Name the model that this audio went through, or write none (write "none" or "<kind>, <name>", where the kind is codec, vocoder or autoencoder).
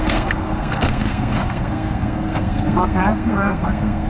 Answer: codec, SNAC